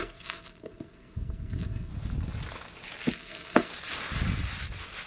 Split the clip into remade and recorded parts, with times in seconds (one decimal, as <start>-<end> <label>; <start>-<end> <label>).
0.0-1.9 remade; 1.9-3.1 recorded; 3.1-3.7 remade; 3.7-5.1 recorded

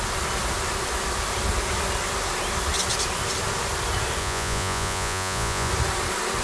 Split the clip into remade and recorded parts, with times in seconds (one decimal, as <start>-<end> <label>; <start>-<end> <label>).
0.0-4.2 recorded; 4.2-5.7 remade; 5.7-6.4 recorded

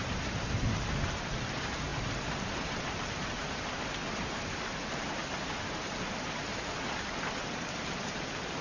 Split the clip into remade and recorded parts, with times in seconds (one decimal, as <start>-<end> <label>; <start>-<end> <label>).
0.0-8.6 recorded

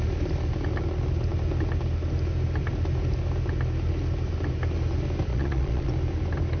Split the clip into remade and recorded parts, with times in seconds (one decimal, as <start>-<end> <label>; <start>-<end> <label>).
0.0-5.3 recorded; 5.3-5.9 remade; 5.9-6.6 recorded

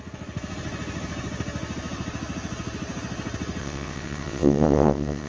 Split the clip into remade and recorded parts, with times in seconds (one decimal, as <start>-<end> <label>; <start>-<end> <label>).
0.0-3.6 recorded; 3.6-5.3 remade

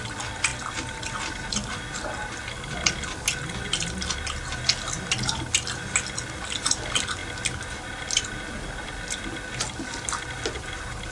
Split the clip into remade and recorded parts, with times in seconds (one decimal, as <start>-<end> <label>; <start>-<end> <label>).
0.0-11.1 recorded